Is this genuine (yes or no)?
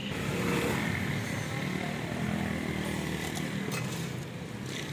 yes